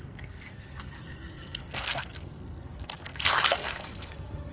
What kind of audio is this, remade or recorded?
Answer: remade